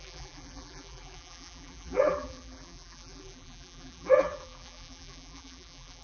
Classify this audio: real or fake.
fake